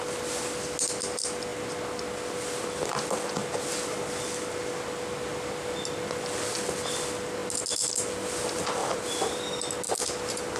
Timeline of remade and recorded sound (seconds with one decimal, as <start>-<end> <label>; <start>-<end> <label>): 0.0-8.8 recorded; 8.8-9.7 remade; 9.7-10.6 recorded